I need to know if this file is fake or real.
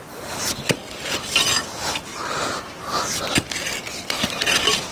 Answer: real